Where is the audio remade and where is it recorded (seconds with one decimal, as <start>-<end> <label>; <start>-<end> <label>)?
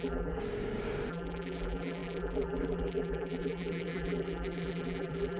0.0-0.4 remade; 0.4-1.1 recorded; 1.1-5.4 remade